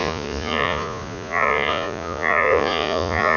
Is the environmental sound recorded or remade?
remade